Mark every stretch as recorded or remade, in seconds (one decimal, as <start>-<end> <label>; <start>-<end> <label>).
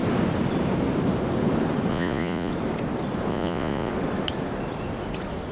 0.0-1.9 recorded; 1.9-2.5 remade; 2.5-3.3 recorded; 3.3-3.9 remade; 3.9-5.5 recorded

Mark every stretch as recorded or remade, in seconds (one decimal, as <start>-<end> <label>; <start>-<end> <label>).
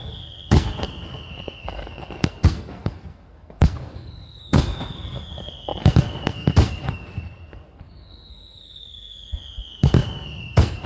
0.0-10.9 remade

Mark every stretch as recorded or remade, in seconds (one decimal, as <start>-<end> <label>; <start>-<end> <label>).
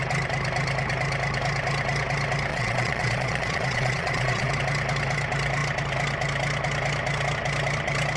0.0-2.5 recorded; 2.5-4.5 remade; 4.5-8.2 recorded